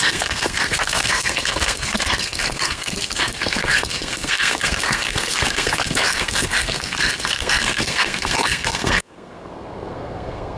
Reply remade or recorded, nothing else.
remade